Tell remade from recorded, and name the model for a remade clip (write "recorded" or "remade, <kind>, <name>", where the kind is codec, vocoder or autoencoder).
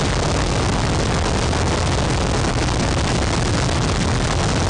recorded